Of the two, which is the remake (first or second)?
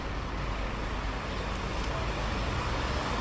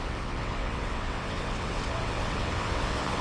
second